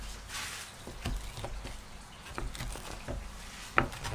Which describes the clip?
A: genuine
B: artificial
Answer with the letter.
A